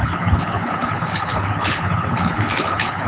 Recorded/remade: remade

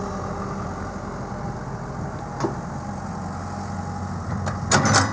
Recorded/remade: recorded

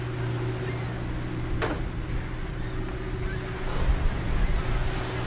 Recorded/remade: recorded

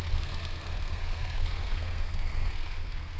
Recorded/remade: remade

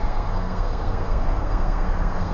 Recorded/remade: remade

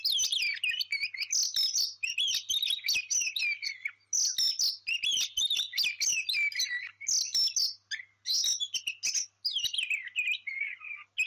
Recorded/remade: recorded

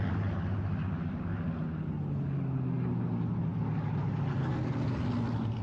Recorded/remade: recorded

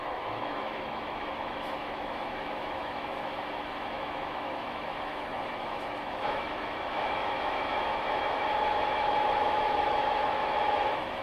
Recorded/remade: remade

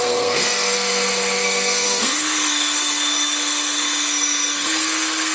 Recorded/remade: remade